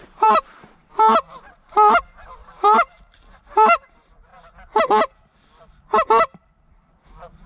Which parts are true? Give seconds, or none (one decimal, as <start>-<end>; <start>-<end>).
4.3-6.7